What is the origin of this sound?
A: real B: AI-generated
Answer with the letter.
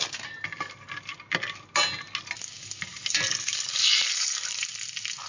A